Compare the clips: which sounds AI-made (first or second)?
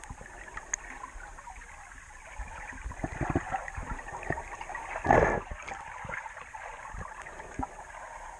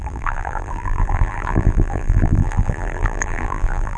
second